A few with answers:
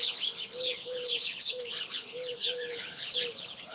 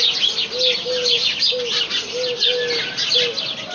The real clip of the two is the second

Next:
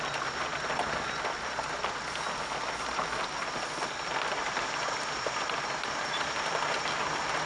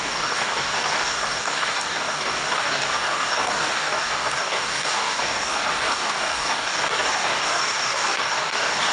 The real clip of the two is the first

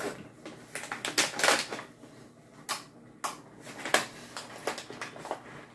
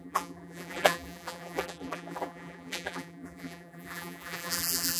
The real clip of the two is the first